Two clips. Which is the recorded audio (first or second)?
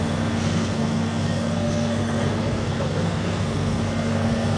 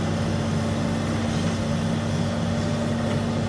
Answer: second